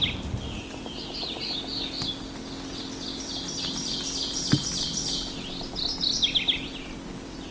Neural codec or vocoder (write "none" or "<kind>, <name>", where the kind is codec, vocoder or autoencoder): none